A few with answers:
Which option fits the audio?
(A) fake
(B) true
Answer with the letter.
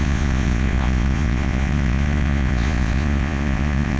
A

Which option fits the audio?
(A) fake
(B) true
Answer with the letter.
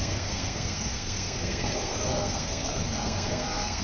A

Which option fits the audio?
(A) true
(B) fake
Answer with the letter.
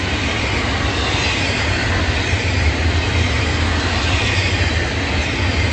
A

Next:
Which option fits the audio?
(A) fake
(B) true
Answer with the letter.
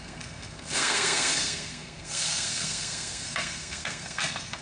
A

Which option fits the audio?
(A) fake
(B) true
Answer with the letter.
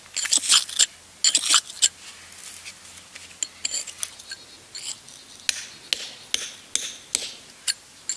B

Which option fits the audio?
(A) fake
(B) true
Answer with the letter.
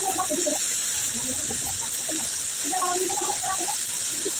B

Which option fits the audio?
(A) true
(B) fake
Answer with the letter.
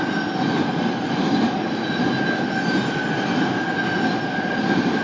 A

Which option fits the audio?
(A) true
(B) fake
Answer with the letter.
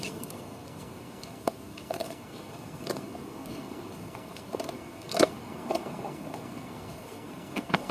B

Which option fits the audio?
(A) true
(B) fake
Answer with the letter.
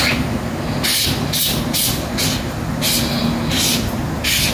A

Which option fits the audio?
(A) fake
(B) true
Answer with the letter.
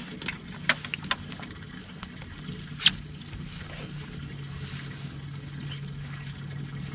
B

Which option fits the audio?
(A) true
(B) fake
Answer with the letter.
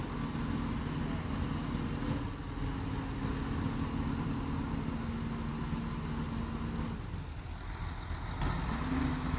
A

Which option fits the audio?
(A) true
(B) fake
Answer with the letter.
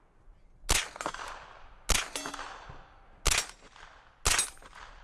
A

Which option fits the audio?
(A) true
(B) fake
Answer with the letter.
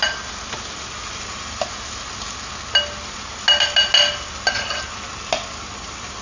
A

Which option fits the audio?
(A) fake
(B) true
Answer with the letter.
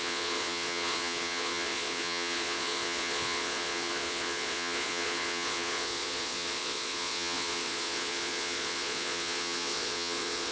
A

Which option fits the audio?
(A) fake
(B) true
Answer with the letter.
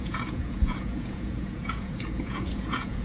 A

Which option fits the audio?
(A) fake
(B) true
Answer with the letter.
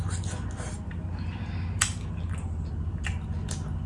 B